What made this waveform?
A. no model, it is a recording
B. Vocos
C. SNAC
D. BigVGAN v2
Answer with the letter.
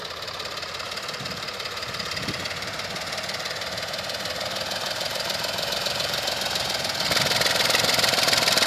D